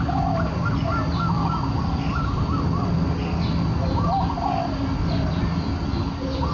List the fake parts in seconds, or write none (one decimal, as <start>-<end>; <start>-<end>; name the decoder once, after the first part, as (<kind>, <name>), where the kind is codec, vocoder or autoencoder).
none